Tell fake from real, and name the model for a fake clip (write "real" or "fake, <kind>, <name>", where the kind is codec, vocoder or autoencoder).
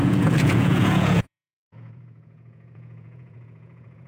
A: fake, vocoder, Vocos